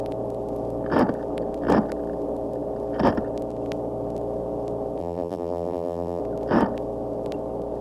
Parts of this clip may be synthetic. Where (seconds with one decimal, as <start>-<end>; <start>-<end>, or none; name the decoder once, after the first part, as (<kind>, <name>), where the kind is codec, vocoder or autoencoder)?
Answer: 5.0-6.2 (vocoder, BigVGAN v2)